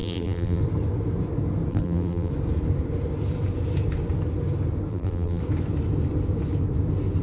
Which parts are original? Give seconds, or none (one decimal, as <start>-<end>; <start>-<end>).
0.6-1.7; 2.3-4.9; 5.4-7.2